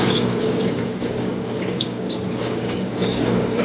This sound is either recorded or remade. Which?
remade